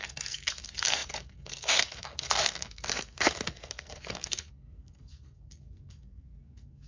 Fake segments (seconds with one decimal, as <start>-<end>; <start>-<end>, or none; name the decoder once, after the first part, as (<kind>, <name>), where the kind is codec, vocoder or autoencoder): 0.0-6.9 (codec, SNAC)

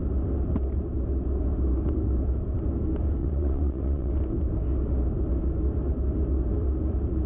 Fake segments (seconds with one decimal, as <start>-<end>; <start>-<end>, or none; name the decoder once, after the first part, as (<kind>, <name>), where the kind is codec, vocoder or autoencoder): 3.2-4.1 (vocoder, WaveNeXt)

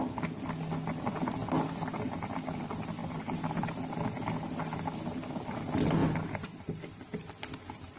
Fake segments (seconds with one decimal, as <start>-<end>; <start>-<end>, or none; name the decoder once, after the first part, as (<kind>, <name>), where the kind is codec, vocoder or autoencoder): none